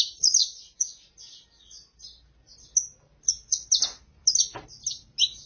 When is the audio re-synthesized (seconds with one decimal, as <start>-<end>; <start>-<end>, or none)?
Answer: 0.4-1.1